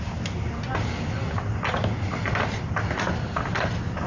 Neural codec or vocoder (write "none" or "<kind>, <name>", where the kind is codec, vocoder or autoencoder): none